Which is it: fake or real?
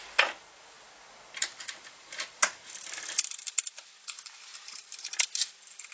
real